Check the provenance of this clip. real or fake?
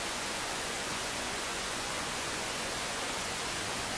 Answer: fake